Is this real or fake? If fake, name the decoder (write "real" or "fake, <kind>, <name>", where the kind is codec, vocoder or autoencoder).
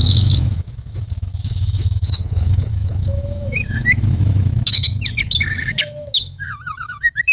fake, autoencoder, DAC-VAE